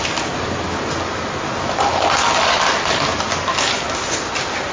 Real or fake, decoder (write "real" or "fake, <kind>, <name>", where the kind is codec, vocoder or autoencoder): real